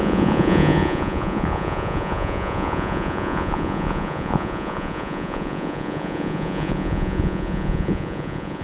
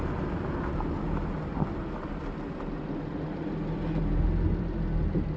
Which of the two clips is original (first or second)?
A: second